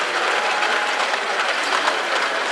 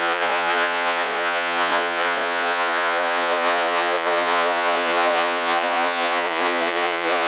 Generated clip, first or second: second